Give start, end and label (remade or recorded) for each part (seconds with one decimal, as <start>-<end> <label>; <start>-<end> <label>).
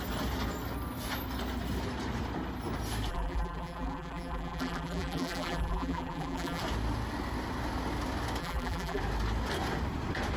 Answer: 0.0-3.1 recorded; 3.1-6.6 remade; 6.6-8.4 recorded; 8.4-9.0 remade; 9.0-10.4 recorded